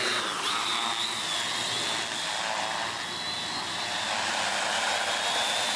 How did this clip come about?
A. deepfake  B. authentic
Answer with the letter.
B